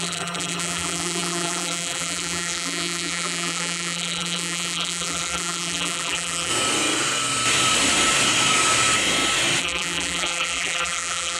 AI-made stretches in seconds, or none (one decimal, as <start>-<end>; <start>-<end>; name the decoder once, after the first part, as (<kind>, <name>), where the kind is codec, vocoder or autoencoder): 0.0-6.5 (vocoder, BigVGAN v2); 9.6-11.4